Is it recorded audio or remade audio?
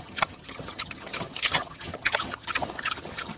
remade